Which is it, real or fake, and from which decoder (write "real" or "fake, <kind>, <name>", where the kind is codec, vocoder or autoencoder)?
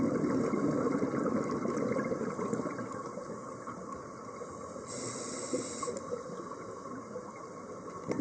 real